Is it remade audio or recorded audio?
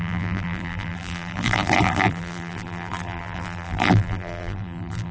remade